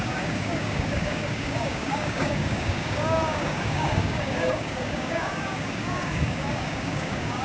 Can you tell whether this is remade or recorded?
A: remade